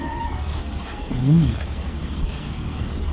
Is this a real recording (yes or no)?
no